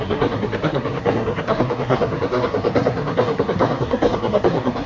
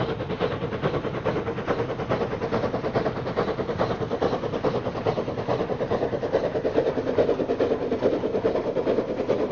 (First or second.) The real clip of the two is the second